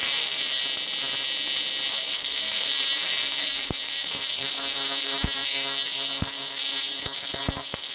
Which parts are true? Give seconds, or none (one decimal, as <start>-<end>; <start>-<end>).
0.6-1.9